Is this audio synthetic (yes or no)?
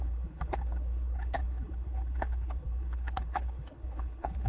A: yes